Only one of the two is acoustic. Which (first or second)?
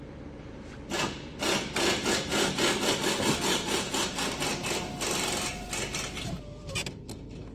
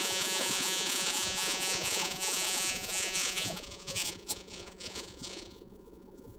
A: first